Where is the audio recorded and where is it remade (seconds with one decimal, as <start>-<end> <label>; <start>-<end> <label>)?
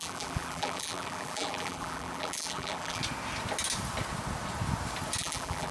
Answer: 0.0-3.0 remade; 3.0-5.2 recorded; 5.2-5.7 remade